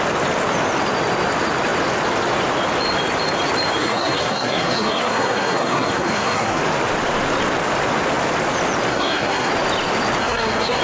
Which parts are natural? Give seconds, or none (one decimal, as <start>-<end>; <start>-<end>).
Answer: 0.0-3.8; 6.6-8.9; 9.5-10.2